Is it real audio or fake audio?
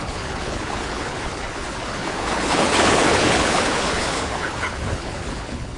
fake